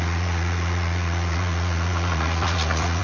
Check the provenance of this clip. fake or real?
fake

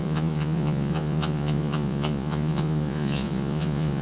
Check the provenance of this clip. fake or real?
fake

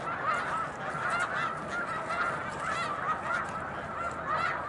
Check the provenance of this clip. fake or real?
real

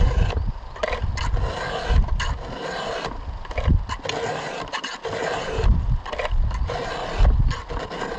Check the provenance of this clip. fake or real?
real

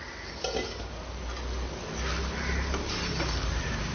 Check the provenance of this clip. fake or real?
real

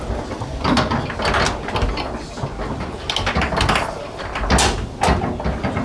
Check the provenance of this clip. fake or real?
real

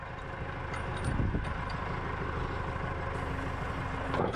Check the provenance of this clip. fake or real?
real